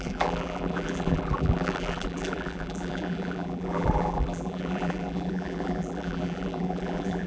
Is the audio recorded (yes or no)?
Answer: no